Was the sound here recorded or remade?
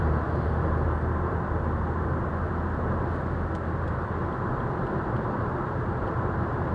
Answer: remade